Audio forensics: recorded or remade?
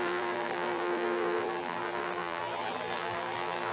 remade